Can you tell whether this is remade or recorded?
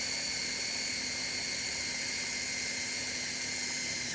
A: recorded